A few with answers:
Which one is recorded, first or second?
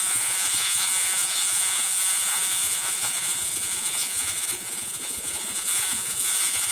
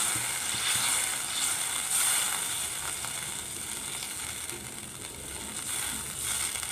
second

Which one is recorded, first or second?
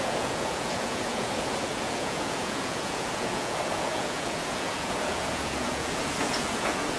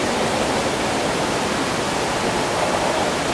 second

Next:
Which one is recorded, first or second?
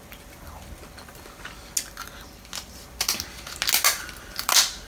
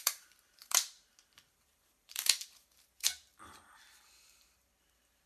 first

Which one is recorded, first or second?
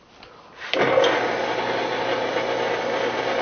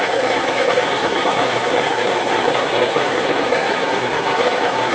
first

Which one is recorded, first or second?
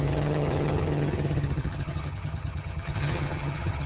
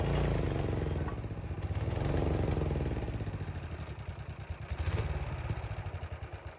second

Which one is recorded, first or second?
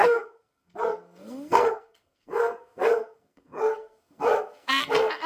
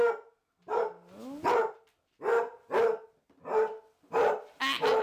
second